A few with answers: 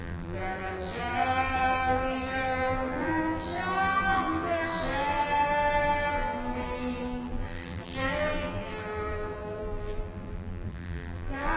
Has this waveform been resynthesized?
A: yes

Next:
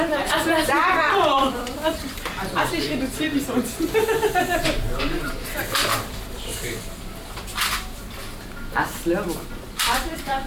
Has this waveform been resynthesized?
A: yes